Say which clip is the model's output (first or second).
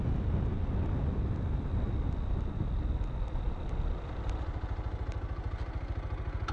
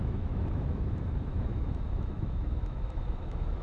second